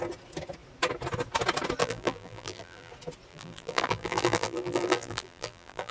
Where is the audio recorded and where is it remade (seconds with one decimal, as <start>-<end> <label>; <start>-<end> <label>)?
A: 0.0-1.8 recorded; 1.8-2.9 remade; 2.9-3.3 recorded; 3.3-5.9 remade